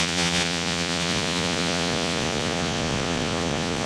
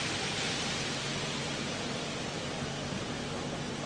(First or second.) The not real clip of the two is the first